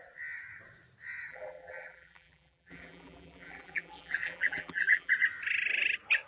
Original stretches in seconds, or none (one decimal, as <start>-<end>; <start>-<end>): 0.0-1.3; 5.1-6.3